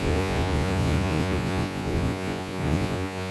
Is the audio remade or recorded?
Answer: remade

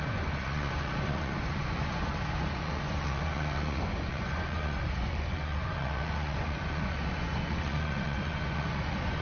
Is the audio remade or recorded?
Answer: remade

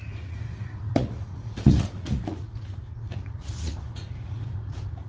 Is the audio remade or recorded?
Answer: remade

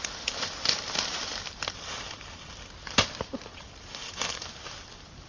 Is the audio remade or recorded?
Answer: recorded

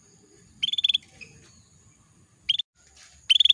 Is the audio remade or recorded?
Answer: recorded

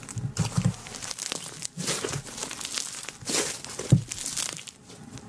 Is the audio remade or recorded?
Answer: recorded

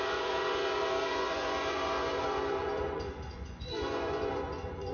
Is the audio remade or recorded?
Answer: remade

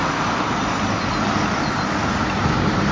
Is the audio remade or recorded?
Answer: recorded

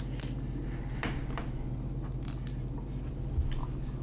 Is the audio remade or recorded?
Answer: recorded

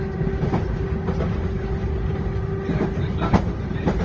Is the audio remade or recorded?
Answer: recorded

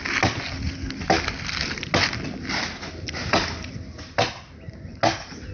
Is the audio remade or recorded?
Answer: recorded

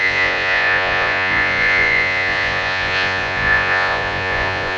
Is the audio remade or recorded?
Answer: remade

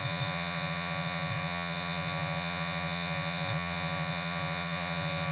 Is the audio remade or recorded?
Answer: remade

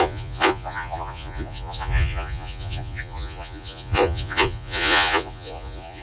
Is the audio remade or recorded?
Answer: remade